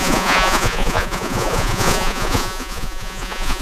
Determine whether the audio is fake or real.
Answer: fake